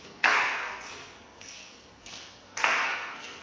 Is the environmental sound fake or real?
fake